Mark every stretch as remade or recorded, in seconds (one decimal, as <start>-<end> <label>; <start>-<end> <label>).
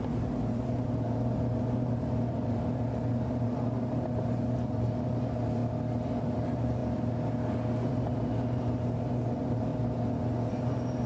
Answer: 0.0-5.6 remade; 5.6-6.2 recorded; 6.2-6.8 remade; 6.8-7.9 recorded; 7.9-9.7 remade; 9.7-10.5 recorded; 10.5-11.1 remade